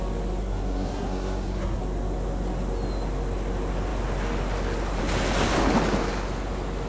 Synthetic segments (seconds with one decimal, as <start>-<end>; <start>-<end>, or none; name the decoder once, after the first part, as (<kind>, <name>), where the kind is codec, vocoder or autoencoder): 0.4-1.8 (codec, SNAC)